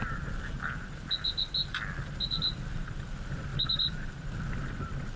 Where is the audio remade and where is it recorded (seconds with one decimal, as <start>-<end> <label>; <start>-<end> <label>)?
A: 0.0-5.2 recorded